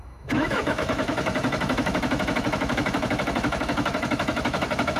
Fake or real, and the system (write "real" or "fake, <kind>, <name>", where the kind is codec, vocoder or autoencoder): fake, autoencoder, DAC-VAE